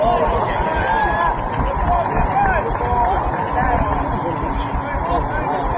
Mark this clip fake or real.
real